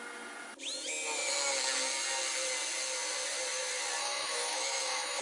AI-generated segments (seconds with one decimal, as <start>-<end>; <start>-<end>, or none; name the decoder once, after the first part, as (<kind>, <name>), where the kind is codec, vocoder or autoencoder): 4.0-5.2 (autoencoder, DAC-VAE)